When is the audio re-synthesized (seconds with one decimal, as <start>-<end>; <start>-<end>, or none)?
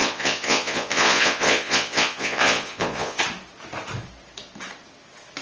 0.0-3.2